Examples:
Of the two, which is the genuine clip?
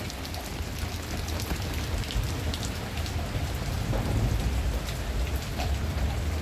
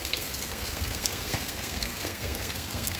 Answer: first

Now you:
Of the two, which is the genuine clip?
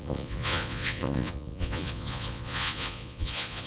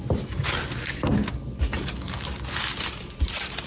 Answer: second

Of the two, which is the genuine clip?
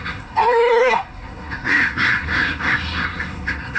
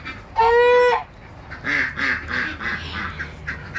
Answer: second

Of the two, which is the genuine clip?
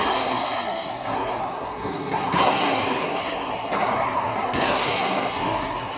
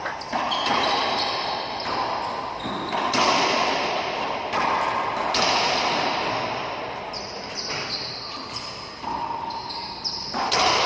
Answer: second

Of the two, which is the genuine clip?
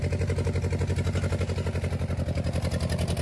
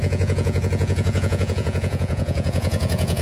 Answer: first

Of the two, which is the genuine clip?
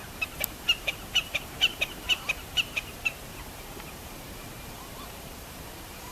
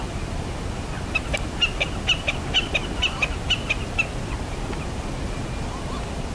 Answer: second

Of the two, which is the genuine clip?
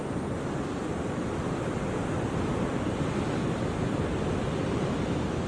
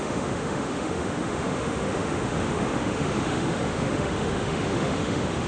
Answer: first